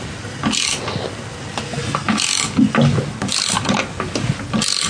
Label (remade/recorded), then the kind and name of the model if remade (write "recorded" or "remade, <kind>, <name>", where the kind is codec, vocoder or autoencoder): recorded